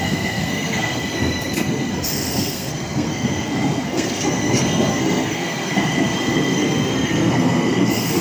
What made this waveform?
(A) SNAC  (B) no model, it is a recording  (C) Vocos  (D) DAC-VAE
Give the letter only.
A